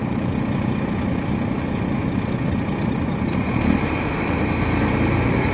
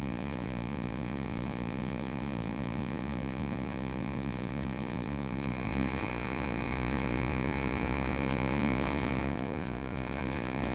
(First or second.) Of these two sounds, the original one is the first